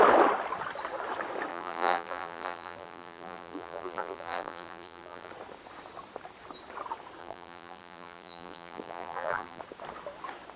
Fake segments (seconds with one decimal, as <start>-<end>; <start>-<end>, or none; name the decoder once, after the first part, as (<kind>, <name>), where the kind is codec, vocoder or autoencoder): 1.5-5.3 (vocoder, BigVGAN v2); 7.2-9.6